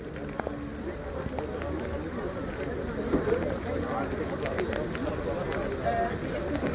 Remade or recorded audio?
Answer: recorded